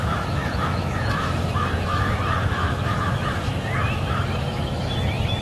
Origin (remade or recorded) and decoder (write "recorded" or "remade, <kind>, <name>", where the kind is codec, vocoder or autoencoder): remade, autoencoder, DAC-VAE